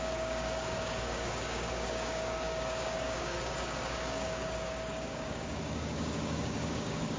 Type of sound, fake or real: fake